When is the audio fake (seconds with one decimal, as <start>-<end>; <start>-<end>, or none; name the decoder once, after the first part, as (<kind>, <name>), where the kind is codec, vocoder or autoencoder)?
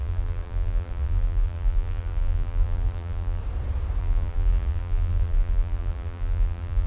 0.0-3.4 (vocoder, BigVGAN v2); 4.0-6.9